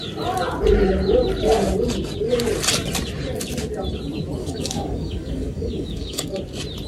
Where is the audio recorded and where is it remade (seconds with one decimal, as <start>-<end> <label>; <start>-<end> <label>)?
0.0-4.4 recorded; 4.4-6.3 remade; 6.3-6.9 recorded